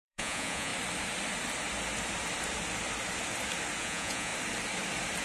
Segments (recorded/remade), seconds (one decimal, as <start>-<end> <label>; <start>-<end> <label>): 0.0-0.7 remade; 0.7-3.8 recorded; 3.8-4.3 remade; 4.3-5.2 recorded